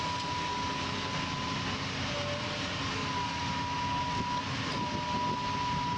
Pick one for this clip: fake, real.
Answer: real